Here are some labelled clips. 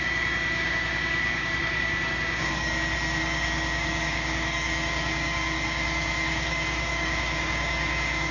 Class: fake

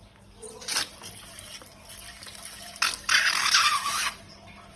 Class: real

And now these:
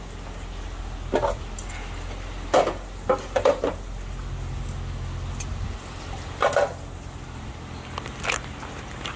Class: real